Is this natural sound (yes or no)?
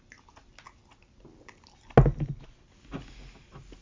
yes